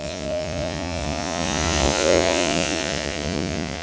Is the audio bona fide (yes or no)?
no